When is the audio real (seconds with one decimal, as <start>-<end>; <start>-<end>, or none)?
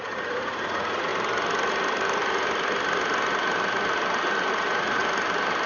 1.1-4.5; 5.0-5.7